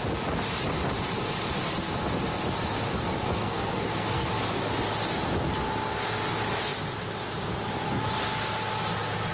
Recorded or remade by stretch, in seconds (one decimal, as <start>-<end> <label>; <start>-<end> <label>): 0.0-2.9 recorded; 2.9-4.3 remade; 4.3-9.3 recorded